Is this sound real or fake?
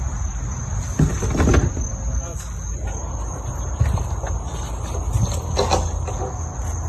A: real